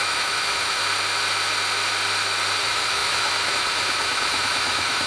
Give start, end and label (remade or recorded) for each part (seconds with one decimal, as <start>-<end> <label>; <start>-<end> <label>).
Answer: 0.0-0.8 remade; 0.8-2.6 recorded; 2.6-5.1 remade